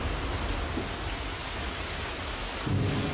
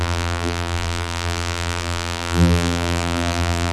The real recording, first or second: first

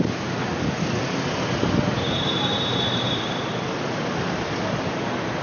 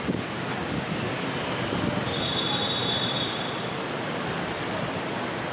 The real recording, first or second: first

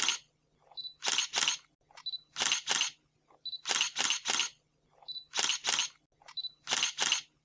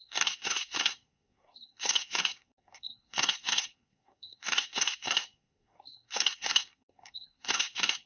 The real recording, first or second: first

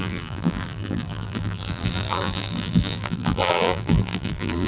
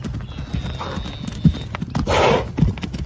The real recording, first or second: second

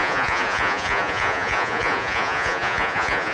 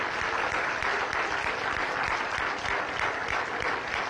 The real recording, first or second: second